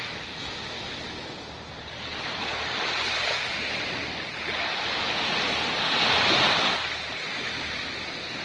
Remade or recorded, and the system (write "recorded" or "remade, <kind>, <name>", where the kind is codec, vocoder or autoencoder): recorded